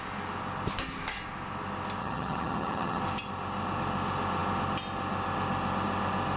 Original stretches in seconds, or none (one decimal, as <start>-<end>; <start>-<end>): 0.0-2.0; 3.0-6.4